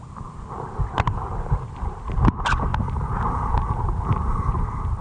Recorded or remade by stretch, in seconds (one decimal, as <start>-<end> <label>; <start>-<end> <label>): 0.0-2.7 recorded; 2.7-4.4 remade; 4.4-5.0 recorded